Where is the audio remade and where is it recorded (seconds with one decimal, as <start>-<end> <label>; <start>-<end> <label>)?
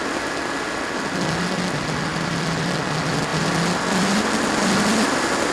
0.0-2.1 recorded; 2.1-2.7 remade; 2.7-3.3 recorded; 3.3-4.2 remade; 4.2-5.5 recorded